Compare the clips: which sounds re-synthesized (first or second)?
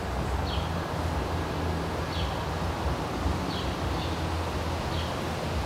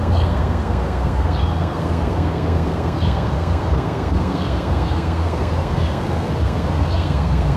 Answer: second